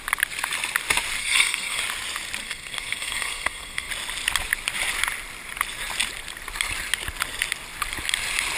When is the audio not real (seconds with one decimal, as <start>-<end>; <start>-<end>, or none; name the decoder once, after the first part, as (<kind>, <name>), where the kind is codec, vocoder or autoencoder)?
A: 1.2-1.8 (codec, SNAC); 2.4-3.9